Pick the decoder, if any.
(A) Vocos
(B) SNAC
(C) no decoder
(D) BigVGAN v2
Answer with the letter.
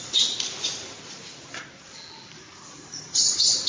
C